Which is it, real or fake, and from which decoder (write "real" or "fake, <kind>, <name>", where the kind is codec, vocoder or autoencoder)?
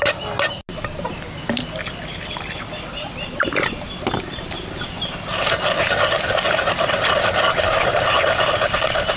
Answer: real